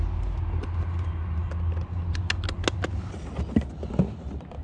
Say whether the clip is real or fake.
real